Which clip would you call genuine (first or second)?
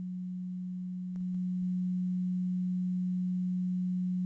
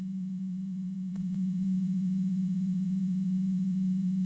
first